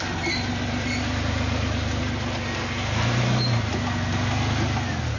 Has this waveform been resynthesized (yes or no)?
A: no